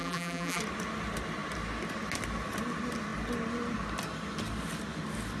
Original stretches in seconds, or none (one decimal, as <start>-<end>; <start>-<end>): 0.6-5.4